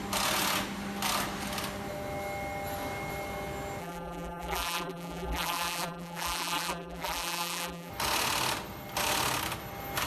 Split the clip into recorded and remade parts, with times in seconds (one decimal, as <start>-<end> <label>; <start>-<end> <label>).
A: 0.0-3.8 recorded; 3.8-7.9 remade; 7.9-10.1 recorded